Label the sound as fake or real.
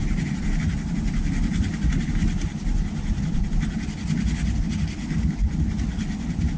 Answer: real